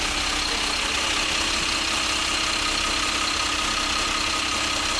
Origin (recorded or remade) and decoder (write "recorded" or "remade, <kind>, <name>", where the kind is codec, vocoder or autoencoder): recorded